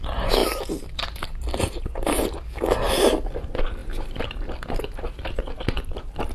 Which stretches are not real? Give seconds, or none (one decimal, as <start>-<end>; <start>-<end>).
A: 0.4-1.8; 3.8-6.3